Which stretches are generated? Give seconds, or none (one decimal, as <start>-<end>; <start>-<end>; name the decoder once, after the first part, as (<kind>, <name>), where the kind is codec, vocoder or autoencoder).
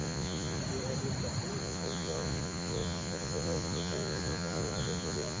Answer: 0.0-0.6 (vocoder, Vocos); 1.6-5.4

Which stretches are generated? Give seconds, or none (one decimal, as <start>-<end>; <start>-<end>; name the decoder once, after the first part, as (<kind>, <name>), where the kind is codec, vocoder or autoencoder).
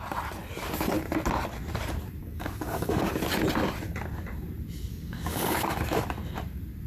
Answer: 2.2-3.1 (codec, DAC); 4.9-5.7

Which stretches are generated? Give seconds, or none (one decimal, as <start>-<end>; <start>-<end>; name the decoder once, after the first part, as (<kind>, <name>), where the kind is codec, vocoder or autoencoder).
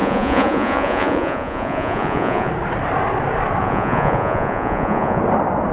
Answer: 0.0-2.5 (vocoder, Vocos); 3.6-5.2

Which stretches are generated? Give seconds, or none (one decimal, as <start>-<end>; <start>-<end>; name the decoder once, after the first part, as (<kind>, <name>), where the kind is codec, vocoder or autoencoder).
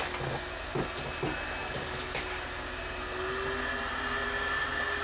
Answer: none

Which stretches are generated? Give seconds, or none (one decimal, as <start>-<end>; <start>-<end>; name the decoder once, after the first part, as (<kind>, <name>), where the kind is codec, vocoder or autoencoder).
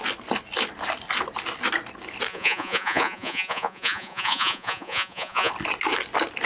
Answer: 2.3-5.5 (vocoder, Vocos)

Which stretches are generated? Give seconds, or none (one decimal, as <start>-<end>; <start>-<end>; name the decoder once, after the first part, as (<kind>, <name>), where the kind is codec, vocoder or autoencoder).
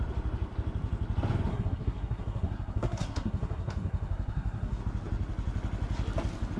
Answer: 1.5-4.8 (codec, SNAC)